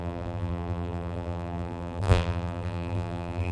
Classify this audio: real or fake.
fake